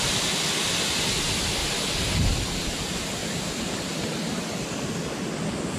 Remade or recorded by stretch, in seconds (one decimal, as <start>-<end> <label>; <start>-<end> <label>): 0.0-5.8 recorded